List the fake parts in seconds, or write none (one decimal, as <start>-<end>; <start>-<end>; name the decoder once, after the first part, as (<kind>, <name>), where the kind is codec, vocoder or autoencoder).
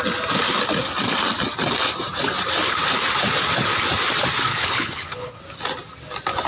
4.5-5.4 (codec, HILCodec)